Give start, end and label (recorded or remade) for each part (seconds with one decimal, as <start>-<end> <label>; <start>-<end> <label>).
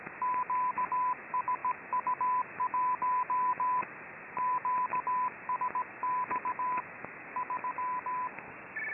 0.0-8.9 recorded